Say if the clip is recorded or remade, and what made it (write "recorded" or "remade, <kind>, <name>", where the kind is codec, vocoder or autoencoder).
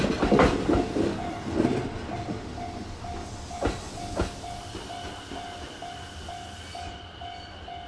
recorded